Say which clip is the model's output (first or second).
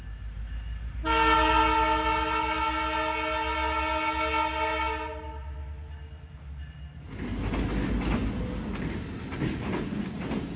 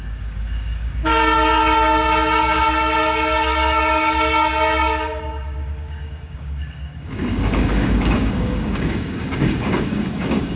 second